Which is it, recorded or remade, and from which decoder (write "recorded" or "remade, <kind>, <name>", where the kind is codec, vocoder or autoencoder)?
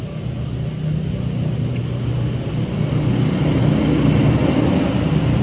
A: recorded